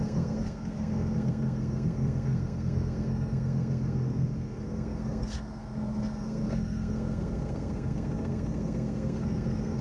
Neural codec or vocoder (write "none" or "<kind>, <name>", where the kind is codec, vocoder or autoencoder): codec, SNAC